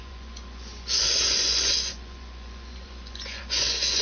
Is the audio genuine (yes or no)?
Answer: no